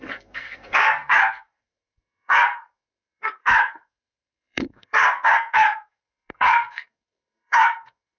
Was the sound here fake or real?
fake